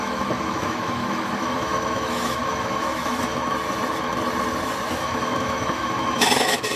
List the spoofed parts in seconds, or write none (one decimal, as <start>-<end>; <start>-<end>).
0.0-3.4; 4.9-6.8